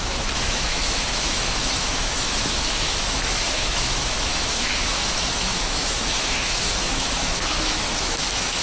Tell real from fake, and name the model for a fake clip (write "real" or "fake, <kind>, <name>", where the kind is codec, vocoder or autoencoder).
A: fake, autoencoder, DAC-VAE